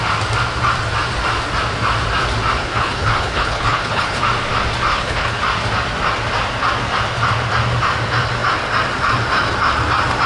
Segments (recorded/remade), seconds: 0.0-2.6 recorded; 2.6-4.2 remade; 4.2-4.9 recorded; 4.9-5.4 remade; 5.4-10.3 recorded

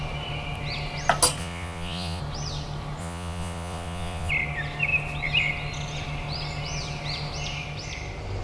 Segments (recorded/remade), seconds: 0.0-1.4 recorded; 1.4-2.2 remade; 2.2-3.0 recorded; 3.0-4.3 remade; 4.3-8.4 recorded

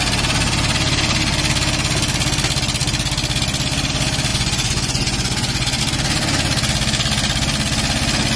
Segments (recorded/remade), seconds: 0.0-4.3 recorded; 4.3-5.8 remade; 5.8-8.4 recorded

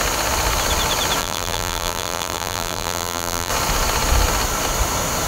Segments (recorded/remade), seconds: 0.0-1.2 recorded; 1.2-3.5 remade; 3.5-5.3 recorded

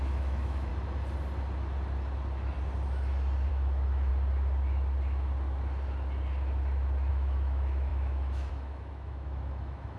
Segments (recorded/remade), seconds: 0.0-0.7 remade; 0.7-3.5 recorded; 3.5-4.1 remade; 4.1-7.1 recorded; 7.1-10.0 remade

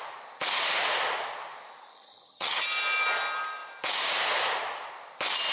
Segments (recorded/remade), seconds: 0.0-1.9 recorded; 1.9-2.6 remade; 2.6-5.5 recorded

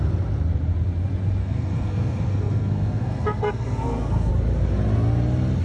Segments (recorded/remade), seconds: 0.0-1.4 recorded; 1.4-4.3 remade; 4.3-5.6 recorded

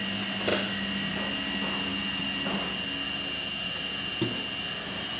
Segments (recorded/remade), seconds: 0.0-5.2 recorded